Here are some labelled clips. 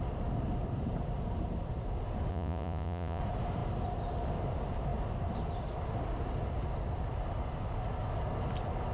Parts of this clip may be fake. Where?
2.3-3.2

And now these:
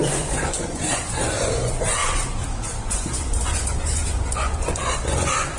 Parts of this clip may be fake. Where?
0.0-5.6

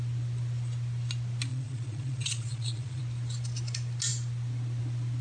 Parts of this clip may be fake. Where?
1.5-3.0

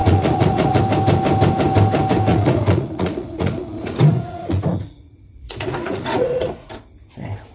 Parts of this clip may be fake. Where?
0.0-0.8; 2.3-6.8